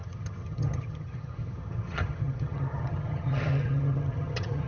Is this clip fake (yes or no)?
yes